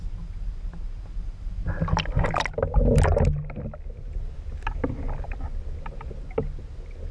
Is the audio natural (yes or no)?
yes